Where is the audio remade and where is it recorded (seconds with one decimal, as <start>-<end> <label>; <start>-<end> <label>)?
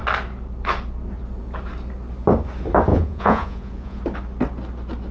0.0-2.9 recorded; 2.9-4.0 remade; 4.0-5.1 recorded